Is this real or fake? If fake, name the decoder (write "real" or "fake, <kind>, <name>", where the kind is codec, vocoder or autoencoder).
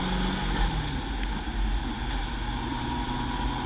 real